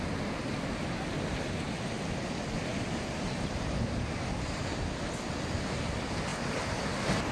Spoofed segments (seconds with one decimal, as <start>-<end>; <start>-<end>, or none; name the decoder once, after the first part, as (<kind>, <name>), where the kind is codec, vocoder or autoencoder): 2.7-3.8 (vocoder, BigVGAN v2)